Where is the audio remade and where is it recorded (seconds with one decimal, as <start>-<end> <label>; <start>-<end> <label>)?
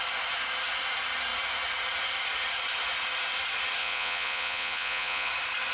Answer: 0.0-3.8 recorded; 3.8-5.3 remade; 5.3-5.7 recorded